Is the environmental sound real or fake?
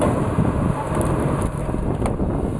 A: real